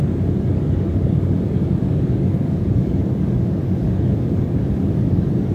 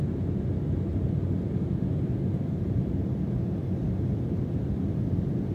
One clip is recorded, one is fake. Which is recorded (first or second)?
second